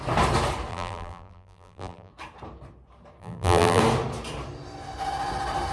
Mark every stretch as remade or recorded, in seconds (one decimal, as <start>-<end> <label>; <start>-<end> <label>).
0.0-0.7 recorded; 0.7-2.1 remade; 2.1-3.2 recorded; 3.2-3.8 remade; 3.8-5.7 recorded